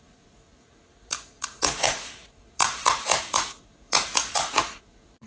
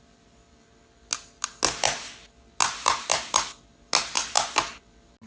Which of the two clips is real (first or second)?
second